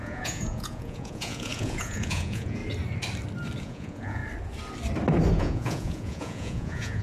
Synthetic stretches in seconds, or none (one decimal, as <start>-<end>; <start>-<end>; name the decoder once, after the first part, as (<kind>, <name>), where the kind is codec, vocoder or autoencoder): 0.0-2.6 (vocoder, Vocos); 3.6-4.2; 5.3-7.0